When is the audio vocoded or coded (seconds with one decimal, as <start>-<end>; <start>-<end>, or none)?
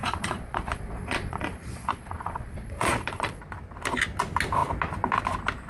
0.0-3.4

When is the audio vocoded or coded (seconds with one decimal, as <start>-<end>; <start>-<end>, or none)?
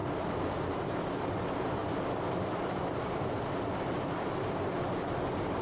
0.0-0.6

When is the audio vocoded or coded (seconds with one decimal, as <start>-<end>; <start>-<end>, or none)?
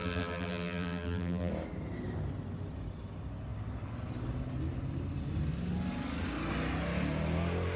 0.0-1.5